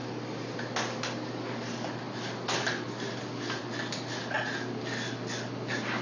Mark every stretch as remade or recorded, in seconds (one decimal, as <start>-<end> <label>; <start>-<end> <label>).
0.0-6.0 recorded